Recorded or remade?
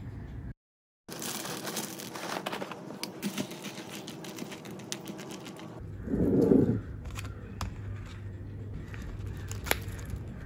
recorded